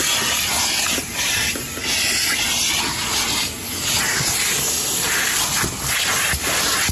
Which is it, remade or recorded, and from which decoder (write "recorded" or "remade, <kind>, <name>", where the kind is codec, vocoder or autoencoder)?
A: recorded